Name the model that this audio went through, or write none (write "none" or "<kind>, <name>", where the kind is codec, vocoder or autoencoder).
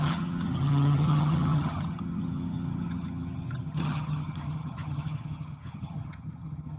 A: vocoder, HiFi-GAN